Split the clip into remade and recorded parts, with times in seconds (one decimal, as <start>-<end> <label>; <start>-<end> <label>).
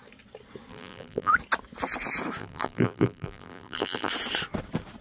0.0-0.7 recorded; 0.7-1.3 remade; 1.3-2.4 recorded; 2.4-4.1 remade; 4.1-5.0 recorded